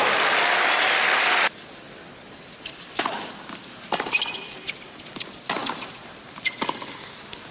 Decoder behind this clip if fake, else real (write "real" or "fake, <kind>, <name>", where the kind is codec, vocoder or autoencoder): real